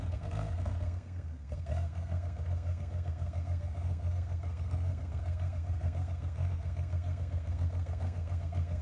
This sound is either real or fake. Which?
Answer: fake